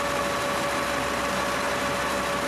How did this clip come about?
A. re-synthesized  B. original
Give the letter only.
B